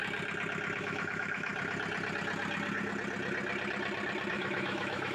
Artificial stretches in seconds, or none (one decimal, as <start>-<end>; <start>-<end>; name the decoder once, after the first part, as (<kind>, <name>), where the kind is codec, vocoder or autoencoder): 0.8-1.5 (autoencoder, DAC-VAE); 4.3-5.1

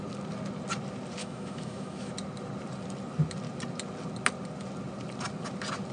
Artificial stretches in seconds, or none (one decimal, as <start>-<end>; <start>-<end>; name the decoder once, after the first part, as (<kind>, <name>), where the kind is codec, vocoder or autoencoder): 1.2-2.1 (autoencoder, DAC-VAE)